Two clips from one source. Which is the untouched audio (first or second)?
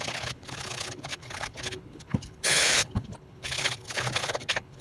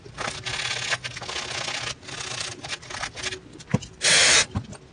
second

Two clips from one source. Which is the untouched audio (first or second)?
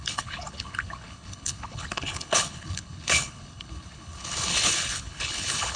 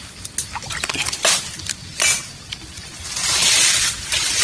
second